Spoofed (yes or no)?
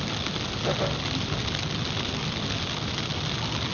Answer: no